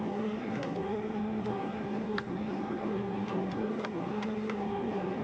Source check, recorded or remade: remade